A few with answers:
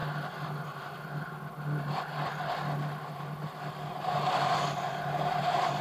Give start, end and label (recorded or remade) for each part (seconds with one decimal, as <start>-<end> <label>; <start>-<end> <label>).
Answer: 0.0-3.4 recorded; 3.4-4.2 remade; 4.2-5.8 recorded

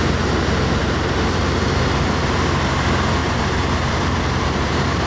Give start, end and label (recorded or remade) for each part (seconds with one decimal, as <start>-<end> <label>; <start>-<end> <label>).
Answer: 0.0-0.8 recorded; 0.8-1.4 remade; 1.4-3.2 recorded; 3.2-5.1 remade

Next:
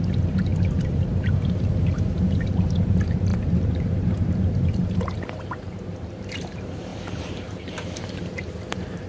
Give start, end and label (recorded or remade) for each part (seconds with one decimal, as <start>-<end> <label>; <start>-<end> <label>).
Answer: 0.0-9.1 remade

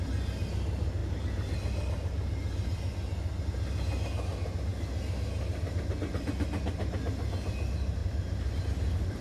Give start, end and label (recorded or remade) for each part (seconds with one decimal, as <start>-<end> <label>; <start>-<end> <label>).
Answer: 0.0-8.0 recorded; 8.0-8.6 remade; 8.6-9.2 recorded